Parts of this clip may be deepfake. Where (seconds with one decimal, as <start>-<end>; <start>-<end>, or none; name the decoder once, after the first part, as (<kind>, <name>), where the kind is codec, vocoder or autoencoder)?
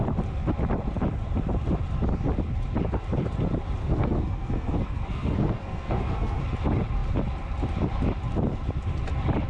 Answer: 3.8-6.4 (codec, SNAC)